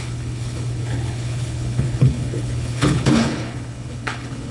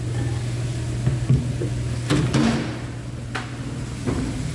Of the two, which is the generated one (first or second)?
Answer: first